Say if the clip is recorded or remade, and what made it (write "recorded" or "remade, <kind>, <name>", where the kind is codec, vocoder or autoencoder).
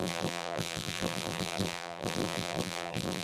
remade, vocoder, BigVGAN v2